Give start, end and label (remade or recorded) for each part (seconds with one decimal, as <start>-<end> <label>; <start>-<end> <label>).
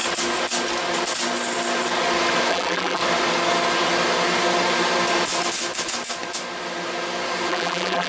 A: 0.0-2.5 recorded; 2.5-3.0 remade; 3.0-7.5 recorded; 7.5-8.1 remade